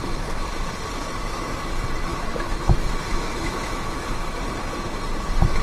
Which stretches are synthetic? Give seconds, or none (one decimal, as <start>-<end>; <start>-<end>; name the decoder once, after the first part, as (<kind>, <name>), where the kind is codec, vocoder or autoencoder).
2.1-4.4 (autoencoder, DAC-VAE)